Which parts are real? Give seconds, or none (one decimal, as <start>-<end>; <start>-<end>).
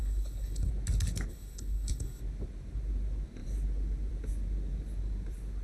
0.7-1.3; 2.2-5.6